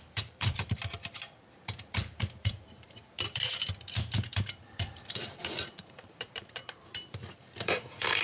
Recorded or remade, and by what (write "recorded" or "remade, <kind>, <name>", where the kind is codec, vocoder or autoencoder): remade, vocoder, BigVGAN v2